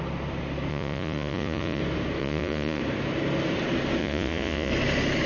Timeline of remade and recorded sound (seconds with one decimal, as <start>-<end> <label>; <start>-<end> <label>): 0.0-0.7 recorded; 0.7-1.8 remade; 1.8-2.2 recorded; 2.2-2.8 remade; 2.8-4.0 recorded; 4.0-4.7 remade; 4.7-5.3 recorded